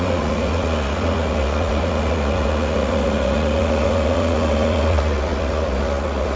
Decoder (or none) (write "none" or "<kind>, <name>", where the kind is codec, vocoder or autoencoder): vocoder, Vocos